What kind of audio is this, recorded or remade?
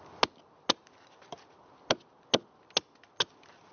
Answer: recorded